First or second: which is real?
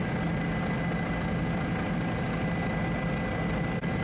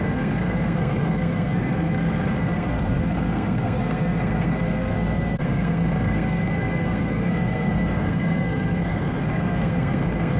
first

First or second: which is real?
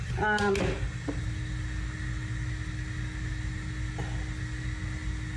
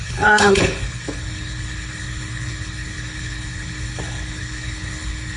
first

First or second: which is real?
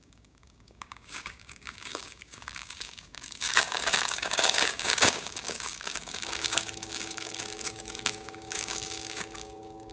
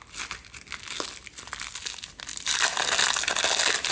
second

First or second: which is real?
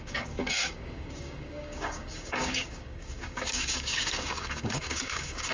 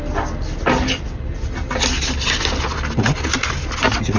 second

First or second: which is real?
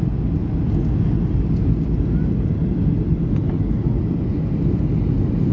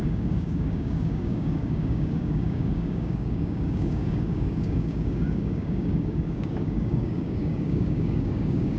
first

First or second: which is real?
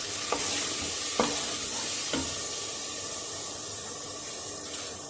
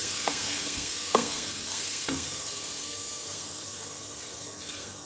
first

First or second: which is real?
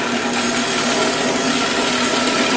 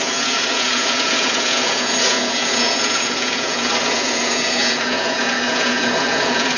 first